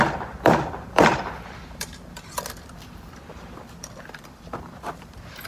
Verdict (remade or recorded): remade